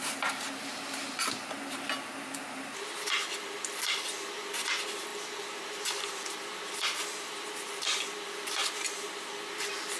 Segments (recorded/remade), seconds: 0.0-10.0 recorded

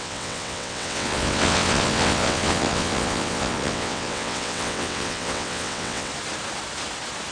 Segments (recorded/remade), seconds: 0.0-6.1 remade; 6.1-7.3 recorded

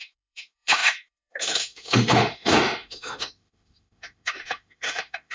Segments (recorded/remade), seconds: 0.0-5.3 remade

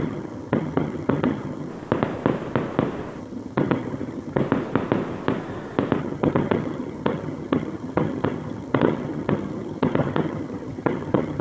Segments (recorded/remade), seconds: 0.0-1.7 remade; 1.7-3.2 recorded; 3.2-4.4 remade; 4.4-6.0 recorded; 6.0-11.4 remade